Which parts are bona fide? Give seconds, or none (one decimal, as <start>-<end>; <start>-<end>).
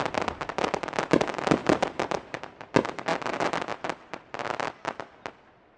0.0-1.6; 2.4-5.8